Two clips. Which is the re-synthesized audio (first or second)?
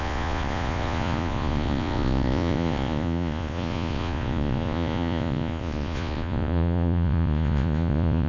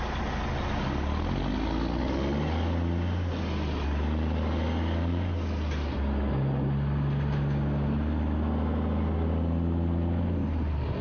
first